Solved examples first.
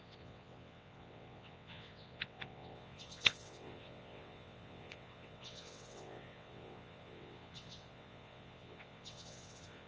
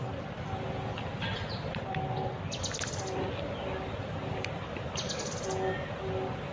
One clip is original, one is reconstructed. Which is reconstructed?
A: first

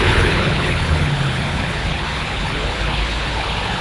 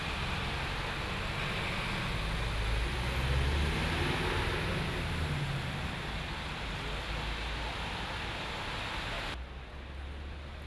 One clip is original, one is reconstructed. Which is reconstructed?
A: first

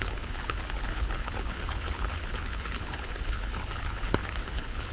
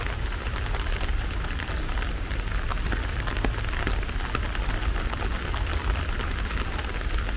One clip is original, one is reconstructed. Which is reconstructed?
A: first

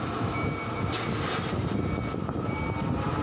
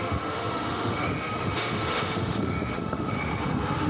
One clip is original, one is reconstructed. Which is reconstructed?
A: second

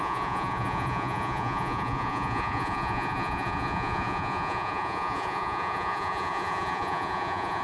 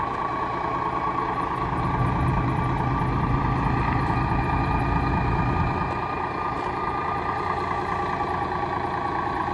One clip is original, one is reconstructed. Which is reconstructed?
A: first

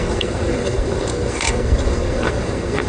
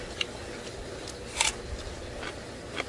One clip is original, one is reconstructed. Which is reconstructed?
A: first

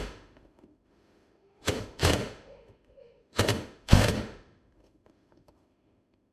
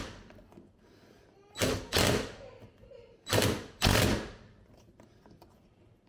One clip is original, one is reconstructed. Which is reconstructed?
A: first